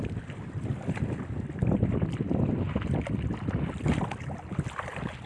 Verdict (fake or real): real